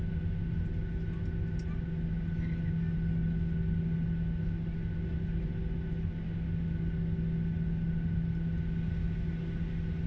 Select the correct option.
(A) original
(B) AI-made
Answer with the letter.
A